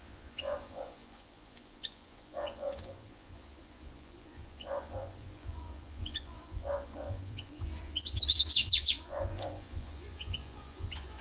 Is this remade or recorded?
remade